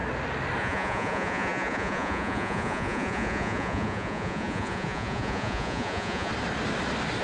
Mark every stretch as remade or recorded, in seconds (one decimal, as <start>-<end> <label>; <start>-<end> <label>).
0.0-0.6 recorded; 0.6-6.3 remade; 6.3-7.2 recorded